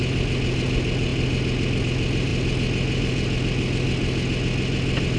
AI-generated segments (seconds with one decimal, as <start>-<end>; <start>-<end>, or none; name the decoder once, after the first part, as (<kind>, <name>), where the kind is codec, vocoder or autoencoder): none